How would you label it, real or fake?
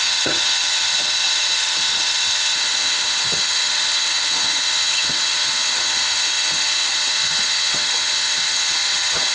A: fake